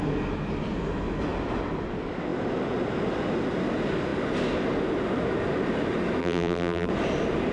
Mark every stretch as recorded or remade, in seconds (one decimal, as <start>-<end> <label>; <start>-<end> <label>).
0.0-6.2 recorded; 6.2-6.9 remade; 6.9-7.5 recorded